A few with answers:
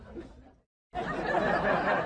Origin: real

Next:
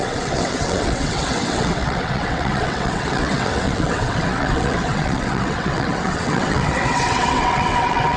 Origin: fake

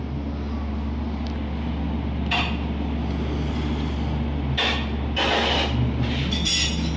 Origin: real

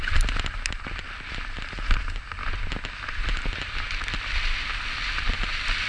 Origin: real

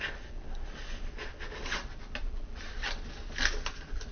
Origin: real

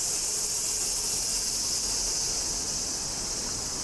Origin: real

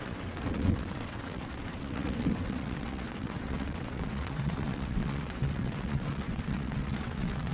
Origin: fake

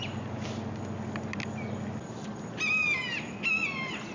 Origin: real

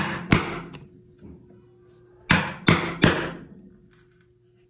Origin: real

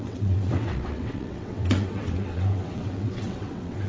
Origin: fake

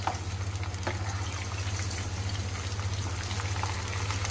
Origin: real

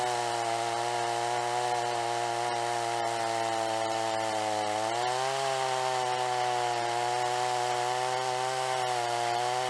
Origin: real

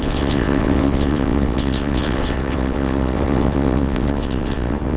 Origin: fake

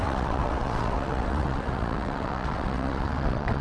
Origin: fake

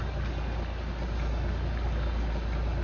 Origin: real